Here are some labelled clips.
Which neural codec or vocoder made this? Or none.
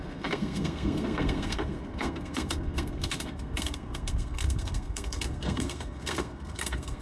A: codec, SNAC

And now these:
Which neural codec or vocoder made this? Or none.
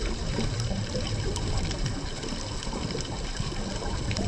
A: vocoder, BigVGAN v2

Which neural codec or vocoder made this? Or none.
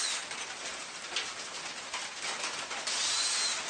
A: none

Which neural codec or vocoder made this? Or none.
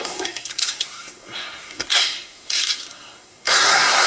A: codec, SNAC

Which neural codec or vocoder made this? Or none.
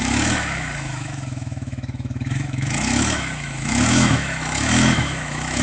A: autoencoder, DAC-VAE